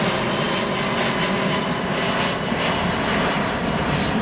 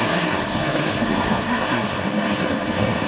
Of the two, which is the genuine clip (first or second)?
first